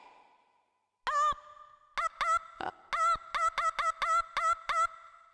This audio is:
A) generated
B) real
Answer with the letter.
B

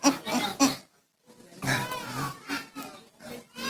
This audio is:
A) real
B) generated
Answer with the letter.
A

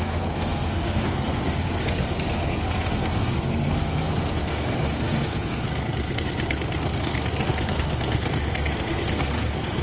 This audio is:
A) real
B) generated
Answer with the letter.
B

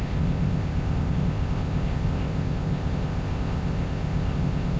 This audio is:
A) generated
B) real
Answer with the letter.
A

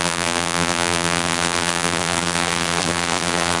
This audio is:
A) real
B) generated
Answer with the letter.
B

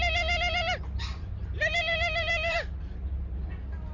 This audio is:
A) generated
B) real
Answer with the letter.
B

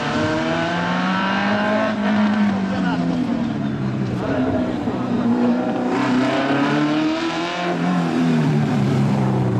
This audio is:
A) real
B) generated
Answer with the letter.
B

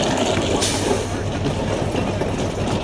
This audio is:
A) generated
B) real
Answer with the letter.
B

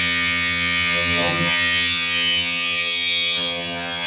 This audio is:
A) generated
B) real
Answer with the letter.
A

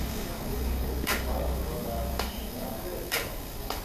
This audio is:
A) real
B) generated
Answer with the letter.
B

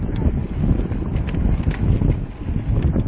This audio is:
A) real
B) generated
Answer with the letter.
A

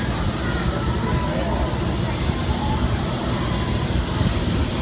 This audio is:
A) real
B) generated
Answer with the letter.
A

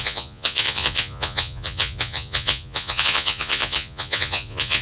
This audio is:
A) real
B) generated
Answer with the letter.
B